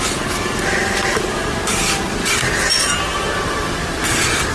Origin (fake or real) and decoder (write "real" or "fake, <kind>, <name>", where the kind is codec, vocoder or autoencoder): real